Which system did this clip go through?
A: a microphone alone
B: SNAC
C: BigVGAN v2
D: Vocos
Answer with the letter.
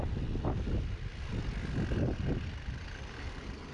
A